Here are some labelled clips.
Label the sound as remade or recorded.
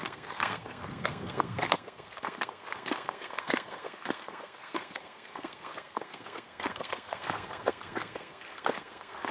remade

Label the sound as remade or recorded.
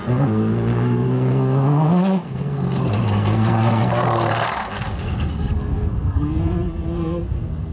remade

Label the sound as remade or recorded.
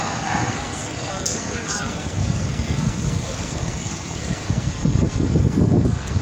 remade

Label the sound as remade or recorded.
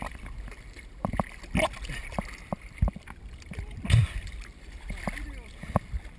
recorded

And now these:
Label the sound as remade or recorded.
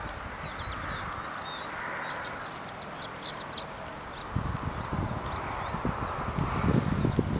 recorded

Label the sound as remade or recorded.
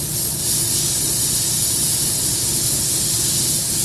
recorded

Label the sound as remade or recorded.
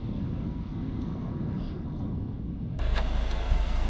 remade